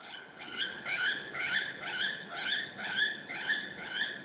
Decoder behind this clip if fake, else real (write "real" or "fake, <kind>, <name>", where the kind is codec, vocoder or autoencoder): fake, codec, HILCodec